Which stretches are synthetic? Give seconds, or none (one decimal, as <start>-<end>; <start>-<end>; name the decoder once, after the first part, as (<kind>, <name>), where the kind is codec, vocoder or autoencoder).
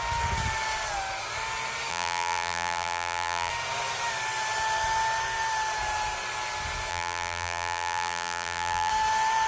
1.9-3.5 (vocoder, BigVGAN v2); 6.9-8.9